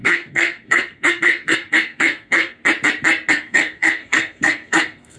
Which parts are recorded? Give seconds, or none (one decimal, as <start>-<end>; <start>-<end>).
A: 2.6-3.3